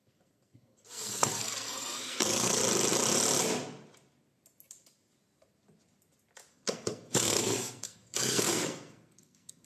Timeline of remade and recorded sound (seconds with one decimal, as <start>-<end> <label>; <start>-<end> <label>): 0.0-2.6 remade; 2.6-6.5 recorded; 6.5-9.7 remade